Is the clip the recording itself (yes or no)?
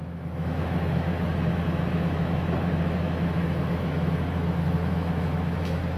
no